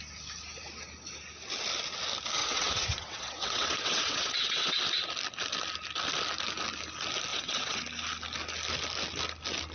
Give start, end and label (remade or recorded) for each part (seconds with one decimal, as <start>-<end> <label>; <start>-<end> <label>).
0.0-2.4 recorded; 2.4-4.8 remade; 4.8-7.3 recorded; 7.3-7.8 remade; 7.8-9.7 recorded